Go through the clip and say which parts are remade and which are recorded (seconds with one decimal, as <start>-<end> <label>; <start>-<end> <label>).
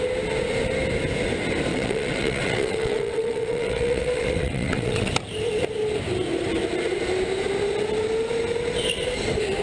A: 0.0-1.7 recorded; 1.7-5.1 remade; 5.1-9.6 recorded